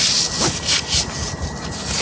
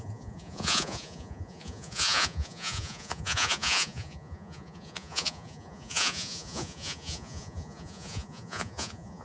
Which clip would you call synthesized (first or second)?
second